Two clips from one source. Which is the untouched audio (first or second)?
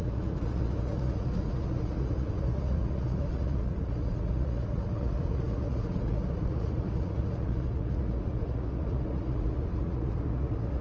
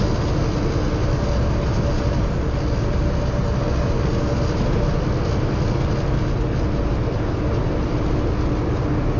second